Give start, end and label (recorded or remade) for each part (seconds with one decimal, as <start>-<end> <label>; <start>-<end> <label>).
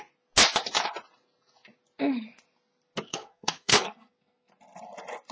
0.0-3.1 recorded; 3.1-4.5 remade; 4.5-5.3 recorded